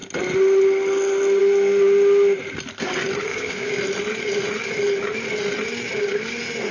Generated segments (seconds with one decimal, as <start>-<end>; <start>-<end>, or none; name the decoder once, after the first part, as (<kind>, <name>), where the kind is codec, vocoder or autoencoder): 3.3-3.8 (codec, DAC)